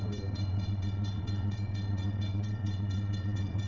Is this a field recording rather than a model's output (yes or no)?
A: no